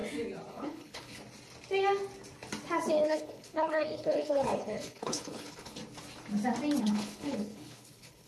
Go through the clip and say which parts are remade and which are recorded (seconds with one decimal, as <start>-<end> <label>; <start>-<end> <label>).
0.0-0.5 recorded; 0.5-1.2 remade; 1.2-2.9 recorded; 2.9-5.8 remade; 5.8-6.8 recorded; 6.8-8.3 remade